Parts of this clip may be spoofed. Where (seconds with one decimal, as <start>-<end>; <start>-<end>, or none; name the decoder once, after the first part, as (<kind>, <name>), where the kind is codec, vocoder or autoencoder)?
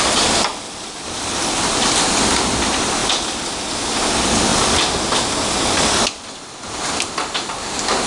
0.5-1.4 (vocoder, BigVGAN v2); 4.5-6.2